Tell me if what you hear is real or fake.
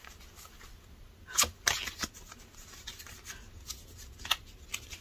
real